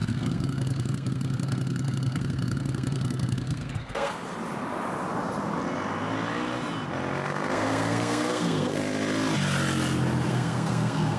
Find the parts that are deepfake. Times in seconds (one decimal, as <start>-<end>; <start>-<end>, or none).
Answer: 0.0-4.2; 7.3-8.8; 10.3-11.2